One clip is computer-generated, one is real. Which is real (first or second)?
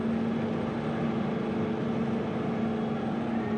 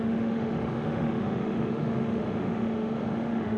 first